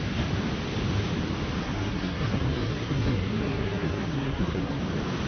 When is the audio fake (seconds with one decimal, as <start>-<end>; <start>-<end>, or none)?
1.6-4.8